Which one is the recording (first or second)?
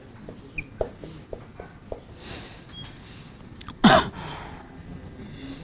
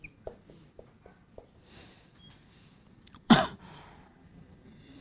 first